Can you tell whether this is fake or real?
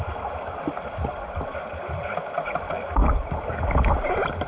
real